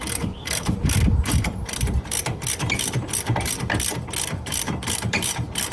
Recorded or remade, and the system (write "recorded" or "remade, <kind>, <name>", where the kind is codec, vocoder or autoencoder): remade, vocoder, BigVGAN v2